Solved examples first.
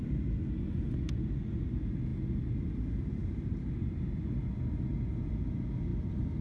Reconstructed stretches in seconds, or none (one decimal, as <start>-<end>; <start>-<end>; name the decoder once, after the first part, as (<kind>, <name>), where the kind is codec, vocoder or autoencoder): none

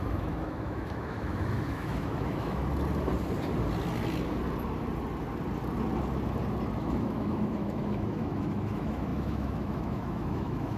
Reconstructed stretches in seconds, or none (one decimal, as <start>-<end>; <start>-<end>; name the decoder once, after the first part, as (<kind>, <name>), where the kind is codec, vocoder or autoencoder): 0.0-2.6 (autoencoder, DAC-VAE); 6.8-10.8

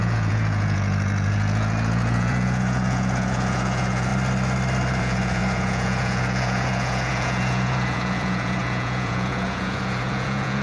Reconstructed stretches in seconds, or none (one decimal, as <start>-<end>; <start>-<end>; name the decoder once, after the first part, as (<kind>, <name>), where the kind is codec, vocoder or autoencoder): 0.0-4.1 (vocoder, Vocos); 5.0-10.6

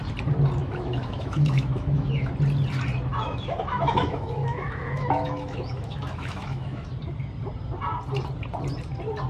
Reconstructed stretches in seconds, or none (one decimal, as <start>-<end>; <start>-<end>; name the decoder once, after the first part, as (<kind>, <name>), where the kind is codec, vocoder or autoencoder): 0.6-2.3 (autoencoder, DAC-VAE); 3.1-6.9